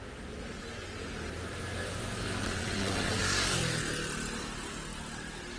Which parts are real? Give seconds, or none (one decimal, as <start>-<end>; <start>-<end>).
0.0-2.4; 3.2-5.6